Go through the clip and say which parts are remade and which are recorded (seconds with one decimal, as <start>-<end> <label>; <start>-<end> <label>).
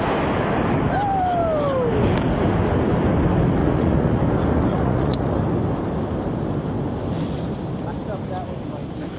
0.0-3.6 recorded; 3.6-4.2 remade; 4.2-4.7 recorded; 4.7-5.4 remade; 5.4-9.2 recorded